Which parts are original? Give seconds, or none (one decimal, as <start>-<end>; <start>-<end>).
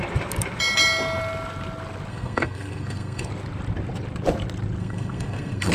0.0-2.1; 3.3-4.8